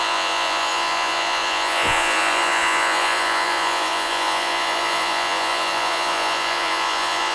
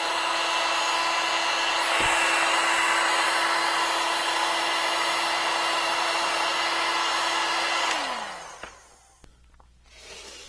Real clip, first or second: second